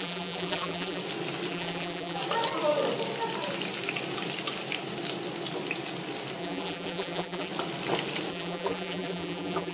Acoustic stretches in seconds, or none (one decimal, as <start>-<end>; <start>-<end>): 1.0-1.5; 2.2-6.4; 7.5-8.3